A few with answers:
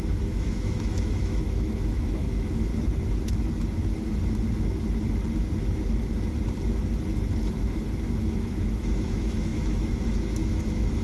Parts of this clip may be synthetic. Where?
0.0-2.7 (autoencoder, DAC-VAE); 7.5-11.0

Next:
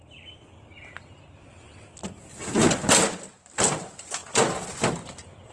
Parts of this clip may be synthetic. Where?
none

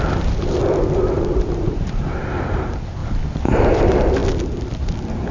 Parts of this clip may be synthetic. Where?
0.0-0.6 (vocoder, BigVGAN v2); 1.4-3.0; 3.6-4.2